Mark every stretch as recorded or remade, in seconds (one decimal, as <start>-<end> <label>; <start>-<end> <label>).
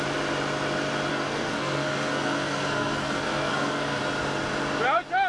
0.0-1.1 recorded; 1.1-4.0 remade; 4.0-5.3 recorded